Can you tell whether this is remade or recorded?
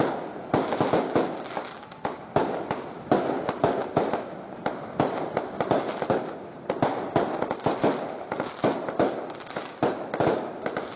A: recorded